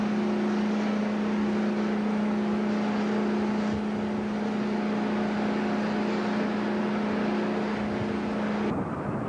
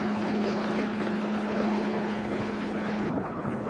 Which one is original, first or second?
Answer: first